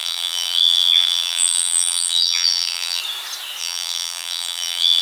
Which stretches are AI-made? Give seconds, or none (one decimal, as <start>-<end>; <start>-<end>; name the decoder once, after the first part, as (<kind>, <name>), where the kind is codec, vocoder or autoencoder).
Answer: 0.0-3.0 (vocoder, BigVGAN v2); 3.6-5.0